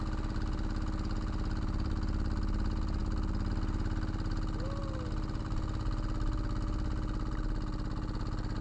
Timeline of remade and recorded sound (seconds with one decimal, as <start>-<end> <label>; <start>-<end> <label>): 0.0-8.6 recorded